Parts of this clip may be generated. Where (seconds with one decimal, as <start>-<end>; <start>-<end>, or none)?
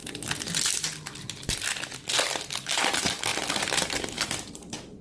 2.9-3.3; 4.5-5.0